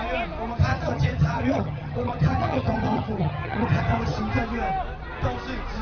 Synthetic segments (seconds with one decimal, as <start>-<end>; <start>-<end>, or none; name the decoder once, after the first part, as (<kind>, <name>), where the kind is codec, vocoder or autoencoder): 0.7-4.2 (vocoder, HiFi-GAN)